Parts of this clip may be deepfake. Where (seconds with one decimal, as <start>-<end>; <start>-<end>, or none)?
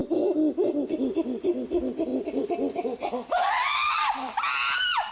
2.1-5.1